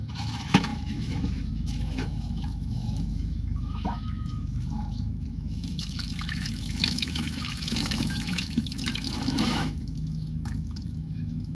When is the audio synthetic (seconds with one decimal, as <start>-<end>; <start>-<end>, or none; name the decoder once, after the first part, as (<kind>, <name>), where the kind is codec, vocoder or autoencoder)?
0.0-11.5 (autoencoder, DAC-VAE)